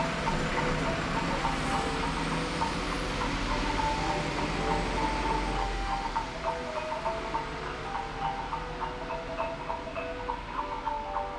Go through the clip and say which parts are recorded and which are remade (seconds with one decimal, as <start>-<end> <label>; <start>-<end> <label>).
0.0-5.6 recorded; 5.6-6.1 remade; 6.1-11.4 recorded